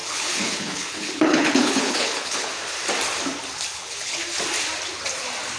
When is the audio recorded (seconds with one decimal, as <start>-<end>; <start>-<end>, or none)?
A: 2.5-3.7; 4.2-5.6